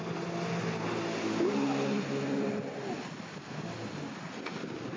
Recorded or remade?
recorded